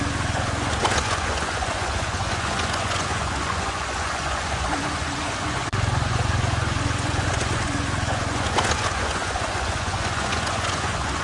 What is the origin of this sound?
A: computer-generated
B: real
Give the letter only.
A